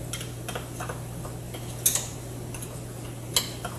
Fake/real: real